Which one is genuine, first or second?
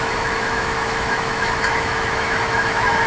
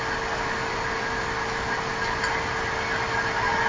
second